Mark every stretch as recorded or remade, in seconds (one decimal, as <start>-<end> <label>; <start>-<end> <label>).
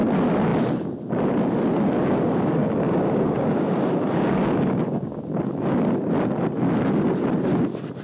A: 0.0-2.0 recorded; 2.0-5.4 remade; 5.4-8.0 recorded